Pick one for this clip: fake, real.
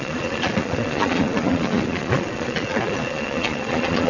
fake